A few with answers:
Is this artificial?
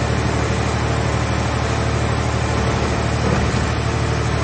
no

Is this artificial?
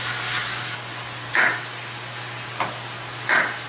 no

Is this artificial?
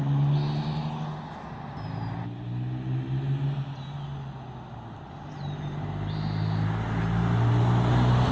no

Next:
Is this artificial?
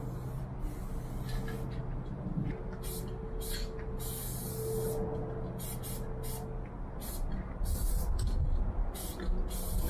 no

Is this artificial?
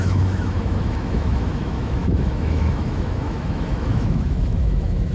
yes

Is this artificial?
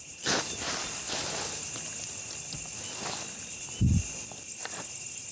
no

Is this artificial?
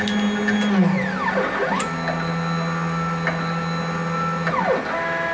no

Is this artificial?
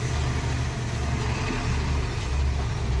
no